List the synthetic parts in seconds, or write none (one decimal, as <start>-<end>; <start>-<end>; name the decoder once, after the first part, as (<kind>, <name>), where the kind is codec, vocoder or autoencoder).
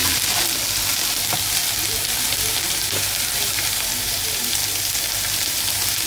1.2-4.6 (vocoder, BigVGAN v2); 5.1-6.1